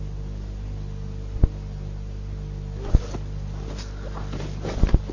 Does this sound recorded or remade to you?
recorded